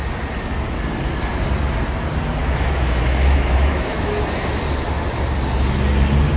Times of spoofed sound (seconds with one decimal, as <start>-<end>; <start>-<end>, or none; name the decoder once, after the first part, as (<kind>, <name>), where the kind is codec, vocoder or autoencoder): 2.4-4.1 (autoencoder, DAC-VAE)